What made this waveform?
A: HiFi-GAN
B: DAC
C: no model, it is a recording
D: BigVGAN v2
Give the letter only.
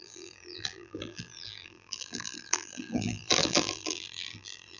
D